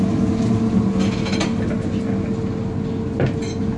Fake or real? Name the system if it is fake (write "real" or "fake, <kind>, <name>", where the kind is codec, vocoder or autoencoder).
real